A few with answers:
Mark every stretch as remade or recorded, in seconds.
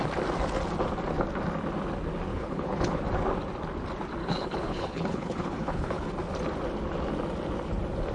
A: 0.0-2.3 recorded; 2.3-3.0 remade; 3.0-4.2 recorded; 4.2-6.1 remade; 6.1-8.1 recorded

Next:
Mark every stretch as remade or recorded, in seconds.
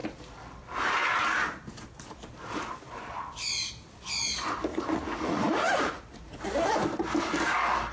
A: 0.0-4.7 recorded; 4.7-6.4 remade; 6.4-7.9 recorded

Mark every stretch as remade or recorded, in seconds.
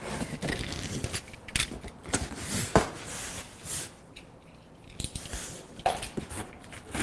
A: 0.0-7.0 recorded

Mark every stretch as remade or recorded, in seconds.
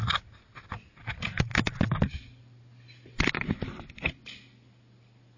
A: 0.0-5.4 recorded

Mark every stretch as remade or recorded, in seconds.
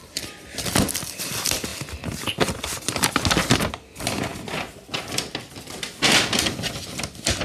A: 0.0-1.7 remade; 1.7-3.7 recorded; 3.7-4.3 remade; 4.3-6.3 recorded; 6.3-7.4 remade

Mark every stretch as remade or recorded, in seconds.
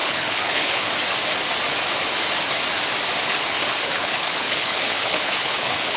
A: 0.0-0.9 remade; 0.9-3.3 recorded; 3.3-6.0 remade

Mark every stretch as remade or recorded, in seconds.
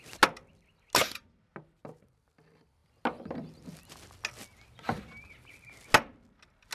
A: 0.0-6.7 recorded